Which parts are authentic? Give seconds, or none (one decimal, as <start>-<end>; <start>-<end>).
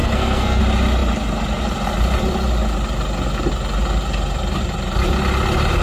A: 0.6-5.8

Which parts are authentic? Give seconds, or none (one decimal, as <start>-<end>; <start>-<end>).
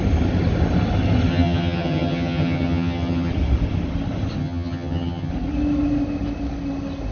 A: 0.0-1.3; 3.3-4.4; 5.3-7.1